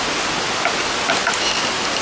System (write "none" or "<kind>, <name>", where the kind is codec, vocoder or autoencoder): none